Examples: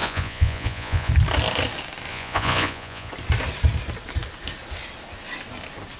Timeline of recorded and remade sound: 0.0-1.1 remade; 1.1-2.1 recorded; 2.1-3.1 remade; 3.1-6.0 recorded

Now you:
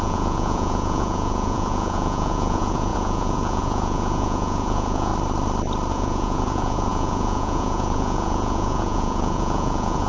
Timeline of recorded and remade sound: 0.0-5.1 remade; 5.1-5.9 recorded; 5.9-10.1 remade